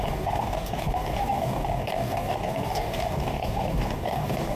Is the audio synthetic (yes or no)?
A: yes